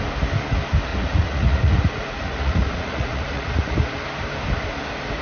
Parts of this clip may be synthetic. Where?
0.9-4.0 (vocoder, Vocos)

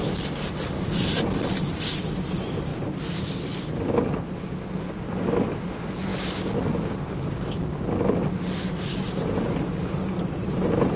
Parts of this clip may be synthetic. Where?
none

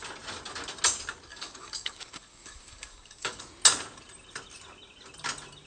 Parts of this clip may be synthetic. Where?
1.3-3.4 (codec, DAC)

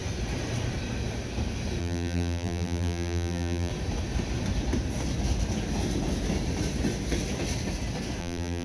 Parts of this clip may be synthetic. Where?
1.8-3.7 (vocoder, BigVGAN v2); 8.2-8.6

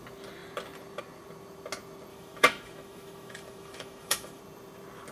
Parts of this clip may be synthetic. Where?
2.1-4.4 (autoencoder, DAC-VAE)